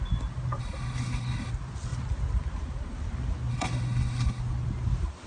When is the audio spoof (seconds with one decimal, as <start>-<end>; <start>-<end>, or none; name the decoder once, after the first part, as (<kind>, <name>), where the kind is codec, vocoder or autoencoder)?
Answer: 0.6-1.5 (codec, HILCodec); 3.5-4.4

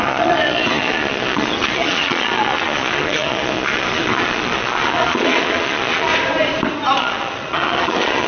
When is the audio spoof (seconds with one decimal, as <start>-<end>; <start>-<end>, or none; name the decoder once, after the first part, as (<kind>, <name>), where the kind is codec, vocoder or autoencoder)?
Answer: 0.0-6.1 (vocoder, Vocos); 7.0-8.3

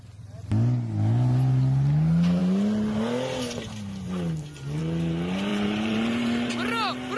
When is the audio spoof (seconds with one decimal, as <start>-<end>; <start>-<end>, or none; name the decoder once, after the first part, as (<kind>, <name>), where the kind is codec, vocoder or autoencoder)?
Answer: 5.5-6.5 (vocoder, BigVGAN v2)

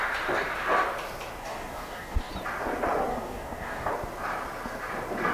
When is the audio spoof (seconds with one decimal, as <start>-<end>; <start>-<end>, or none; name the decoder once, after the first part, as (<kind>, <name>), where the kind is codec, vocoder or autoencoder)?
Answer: 1.4-2.3 (codec, DAC); 3.1-3.9

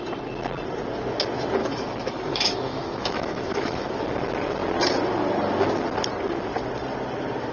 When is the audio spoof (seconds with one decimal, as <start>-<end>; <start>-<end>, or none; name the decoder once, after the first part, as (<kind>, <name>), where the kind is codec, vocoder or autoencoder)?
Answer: 1.6-3.9 (autoencoder, DAC-VAE)

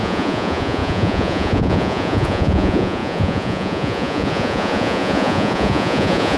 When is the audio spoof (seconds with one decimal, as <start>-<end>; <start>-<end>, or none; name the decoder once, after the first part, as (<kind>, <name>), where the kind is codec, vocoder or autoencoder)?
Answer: 0.0-6.4 (vocoder, Vocos)